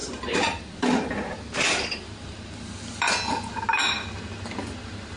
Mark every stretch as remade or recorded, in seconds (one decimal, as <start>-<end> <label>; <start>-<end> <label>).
0.0-3.1 remade; 3.1-5.2 recorded